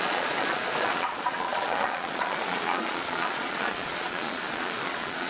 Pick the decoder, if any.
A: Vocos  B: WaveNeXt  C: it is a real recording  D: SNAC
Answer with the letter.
A